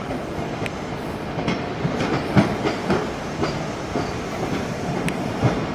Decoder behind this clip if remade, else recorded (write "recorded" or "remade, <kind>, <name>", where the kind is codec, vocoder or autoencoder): recorded